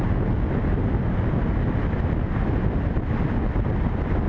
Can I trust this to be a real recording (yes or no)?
yes